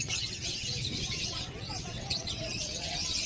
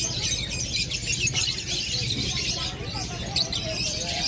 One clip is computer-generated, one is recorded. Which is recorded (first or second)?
second